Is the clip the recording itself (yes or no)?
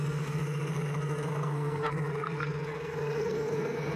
no